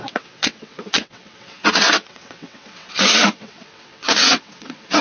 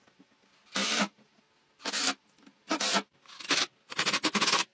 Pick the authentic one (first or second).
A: second